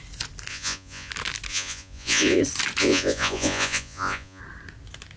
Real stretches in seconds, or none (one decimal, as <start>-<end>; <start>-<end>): 0.0-0.5; 1.1-1.5; 2.4-2.8; 4.4-5.2